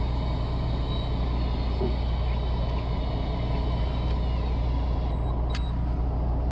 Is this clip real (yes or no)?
yes